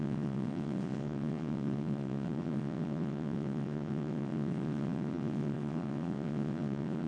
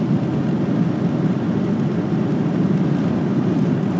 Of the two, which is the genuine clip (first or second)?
second